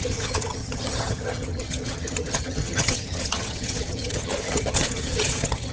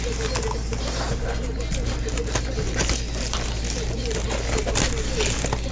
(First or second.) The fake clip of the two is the first